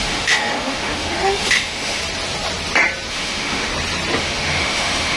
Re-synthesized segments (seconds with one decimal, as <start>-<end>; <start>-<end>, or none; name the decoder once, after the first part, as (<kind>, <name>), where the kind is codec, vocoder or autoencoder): 0.0-2.0 (autoencoder, DAC-VAE); 3.1-3.7; 4.2-5.2